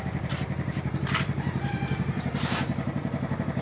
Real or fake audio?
fake